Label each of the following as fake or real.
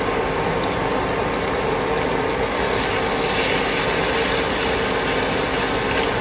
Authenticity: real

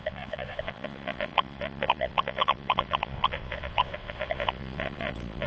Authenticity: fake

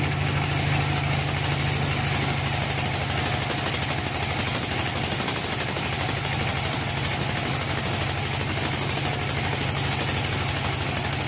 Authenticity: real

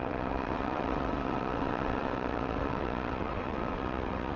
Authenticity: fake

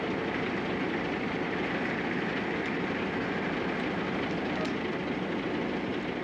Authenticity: real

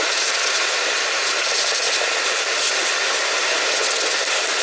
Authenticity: real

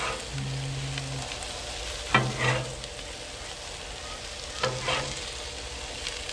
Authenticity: real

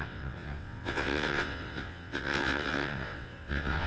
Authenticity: fake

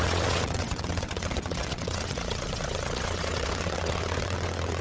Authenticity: fake